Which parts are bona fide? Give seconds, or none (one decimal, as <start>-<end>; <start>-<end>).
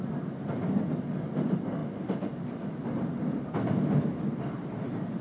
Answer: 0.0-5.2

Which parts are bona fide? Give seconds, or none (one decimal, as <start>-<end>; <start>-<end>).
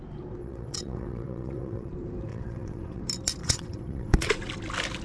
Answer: 0.0-0.4; 1.9-2.3; 3.0-3.4; 4.3-5.0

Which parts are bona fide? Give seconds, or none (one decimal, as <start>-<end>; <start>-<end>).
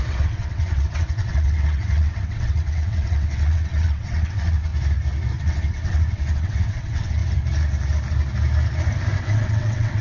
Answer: 4.7-5.4; 7.2-9.2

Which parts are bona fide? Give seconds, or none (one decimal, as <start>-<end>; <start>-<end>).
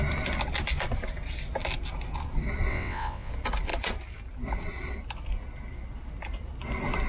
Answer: 0.0-2.7; 3.3-7.1